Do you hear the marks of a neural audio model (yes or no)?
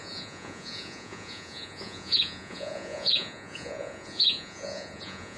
yes